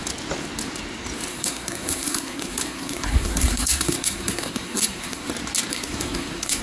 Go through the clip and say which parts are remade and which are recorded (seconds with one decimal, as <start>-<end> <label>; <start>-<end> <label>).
0.0-1.3 recorded; 1.3-5.3 remade; 5.3-5.7 recorded; 5.7-6.6 remade